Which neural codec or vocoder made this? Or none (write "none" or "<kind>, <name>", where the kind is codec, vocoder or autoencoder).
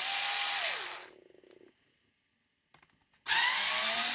none